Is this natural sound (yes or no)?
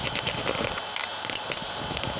yes